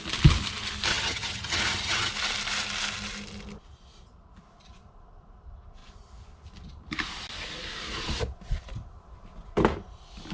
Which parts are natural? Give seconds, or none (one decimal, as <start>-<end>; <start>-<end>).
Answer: 0.0-0.9; 2.1-10.3